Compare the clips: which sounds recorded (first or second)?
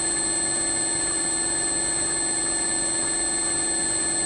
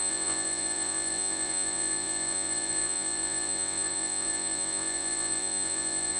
first